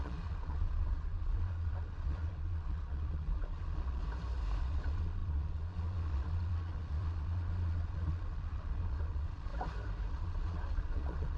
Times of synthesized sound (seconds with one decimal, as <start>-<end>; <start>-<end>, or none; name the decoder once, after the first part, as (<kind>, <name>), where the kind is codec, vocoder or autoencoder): 0.0-4.0 (vocoder, Vocos); 4.6-9.5; 10.1-11.4